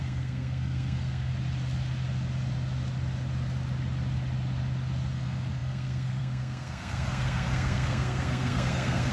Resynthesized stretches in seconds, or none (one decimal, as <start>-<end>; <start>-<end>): 0.0-1.3; 5.1-9.1